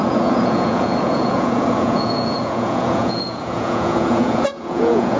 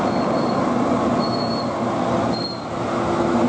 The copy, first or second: first